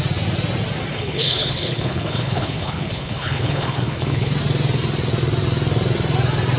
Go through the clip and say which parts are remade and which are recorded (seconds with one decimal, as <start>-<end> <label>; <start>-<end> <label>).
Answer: 0.0-0.9 recorded; 0.9-4.3 remade; 4.3-6.6 recorded